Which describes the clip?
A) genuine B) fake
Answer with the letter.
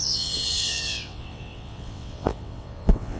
B